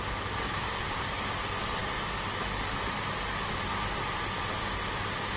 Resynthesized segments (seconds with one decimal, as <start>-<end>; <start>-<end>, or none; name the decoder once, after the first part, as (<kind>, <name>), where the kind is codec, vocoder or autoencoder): none